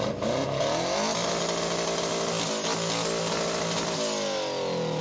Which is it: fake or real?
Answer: real